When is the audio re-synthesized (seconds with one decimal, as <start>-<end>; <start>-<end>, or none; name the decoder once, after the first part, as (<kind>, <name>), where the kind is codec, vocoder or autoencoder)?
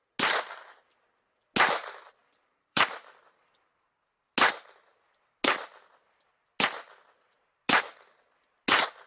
2.2-3.4 (vocoder, BigVGAN v2)